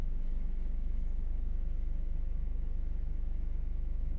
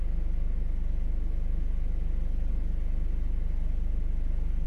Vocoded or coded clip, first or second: first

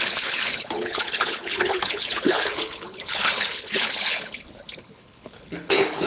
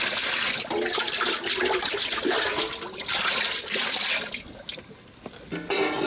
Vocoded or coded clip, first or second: first